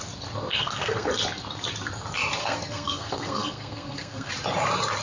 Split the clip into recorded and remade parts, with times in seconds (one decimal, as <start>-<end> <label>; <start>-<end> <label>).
0.0-0.5 recorded; 0.5-1.1 remade; 1.1-2.4 recorded; 2.4-4.3 remade; 4.3-5.0 recorded

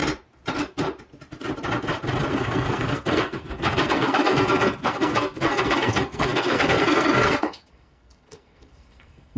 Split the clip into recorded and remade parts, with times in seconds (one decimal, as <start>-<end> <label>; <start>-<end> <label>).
0.0-2.3 recorded; 2.3-9.4 remade